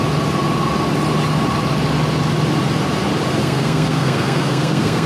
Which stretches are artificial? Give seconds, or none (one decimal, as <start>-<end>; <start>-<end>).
3.4-5.1